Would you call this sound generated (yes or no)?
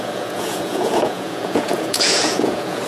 yes